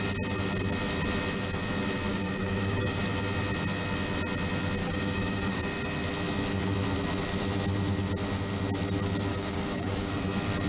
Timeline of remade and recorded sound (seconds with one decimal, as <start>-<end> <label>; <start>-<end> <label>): 0.0-2.1 recorded; 2.1-3.0 remade; 3.0-4.8 recorded; 4.8-5.6 remade; 5.6-9.3 recorded; 9.3-10.1 remade; 10.1-10.7 recorded

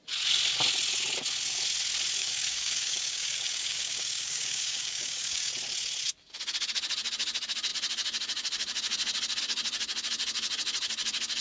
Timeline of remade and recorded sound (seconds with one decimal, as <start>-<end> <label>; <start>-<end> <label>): 0.0-2.2 recorded; 2.2-5.5 remade; 5.5-11.4 recorded